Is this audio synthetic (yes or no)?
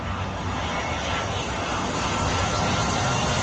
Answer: no